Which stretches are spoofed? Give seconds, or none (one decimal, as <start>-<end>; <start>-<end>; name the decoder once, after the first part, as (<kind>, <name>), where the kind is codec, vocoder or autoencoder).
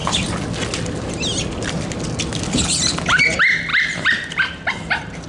3.7-4.7 (vocoder, BigVGAN v2)